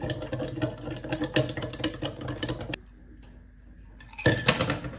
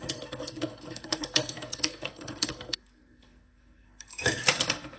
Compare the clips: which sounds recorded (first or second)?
first